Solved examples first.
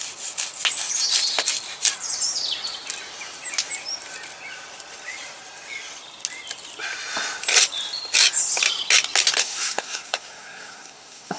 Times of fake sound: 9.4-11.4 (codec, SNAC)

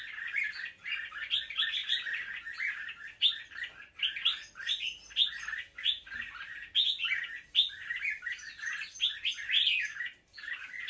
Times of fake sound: none

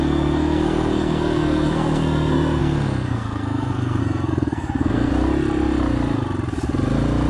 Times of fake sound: 0.0-5.1 (codec, SNAC)

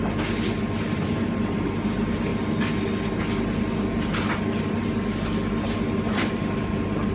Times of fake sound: none

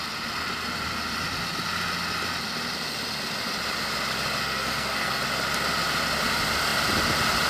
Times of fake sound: 4.4-5.2 (codec, SNAC)

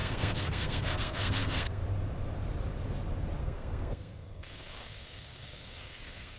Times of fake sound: 0.0-1.8 (codec, SNAC); 3.4-6.4

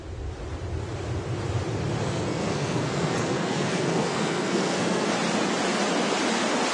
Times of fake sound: 2.0-5.1 (codec, SNAC)

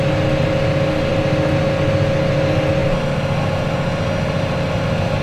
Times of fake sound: none